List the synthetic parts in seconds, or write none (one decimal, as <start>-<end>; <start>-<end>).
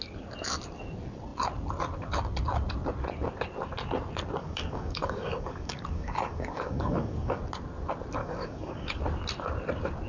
4.4-7.4; 8.2-9.0